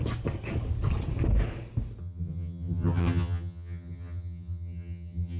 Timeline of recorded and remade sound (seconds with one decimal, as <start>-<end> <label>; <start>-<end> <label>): 0.0-2.0 recorded; 2.0-5.4 remade